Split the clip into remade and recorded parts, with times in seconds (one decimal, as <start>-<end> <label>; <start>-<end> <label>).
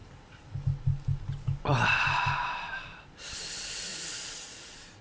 0.0-3.9 recorded; 3.9-5.0 remade